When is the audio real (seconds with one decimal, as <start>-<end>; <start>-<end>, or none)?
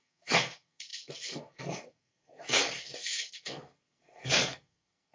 none